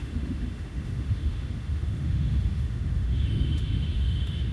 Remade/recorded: remade